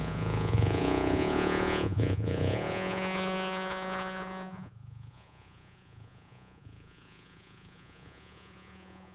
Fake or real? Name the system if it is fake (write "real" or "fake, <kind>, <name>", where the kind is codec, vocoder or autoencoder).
fake, vocoder, Vocos